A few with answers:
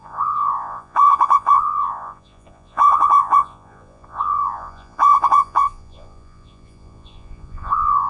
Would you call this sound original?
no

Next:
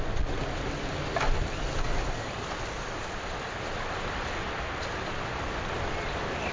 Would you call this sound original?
yes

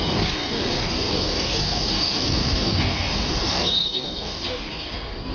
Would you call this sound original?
no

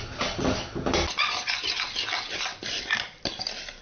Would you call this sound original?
yes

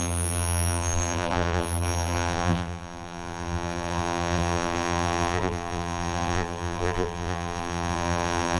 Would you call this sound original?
no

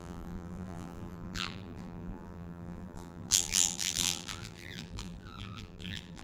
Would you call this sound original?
no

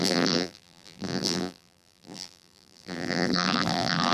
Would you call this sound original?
no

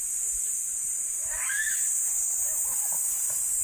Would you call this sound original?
no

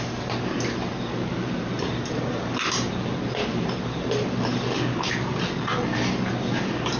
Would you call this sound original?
yes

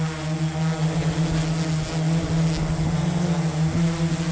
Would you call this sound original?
yes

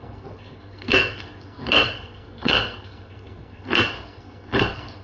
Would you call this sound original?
no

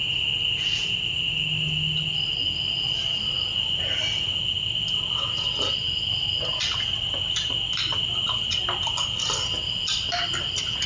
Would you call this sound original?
yes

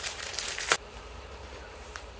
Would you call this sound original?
no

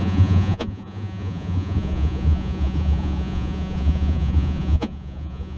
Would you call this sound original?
no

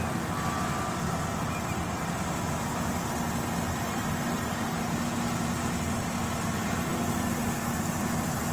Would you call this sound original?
yes